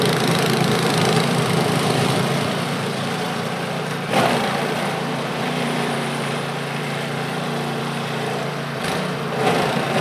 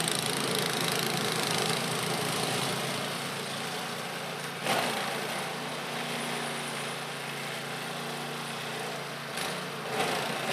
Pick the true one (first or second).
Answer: second